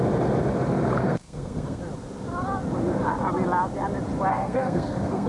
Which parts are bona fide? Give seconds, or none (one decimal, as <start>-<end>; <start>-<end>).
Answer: 0.0-1.0; 1.8-4.3